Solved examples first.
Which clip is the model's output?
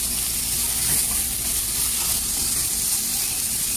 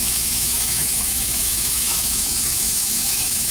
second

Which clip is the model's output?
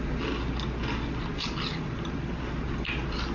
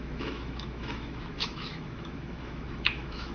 second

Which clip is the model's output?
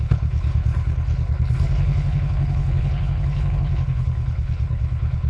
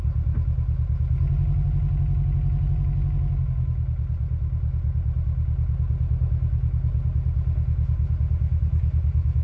first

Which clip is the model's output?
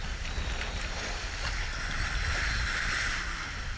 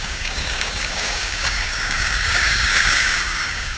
second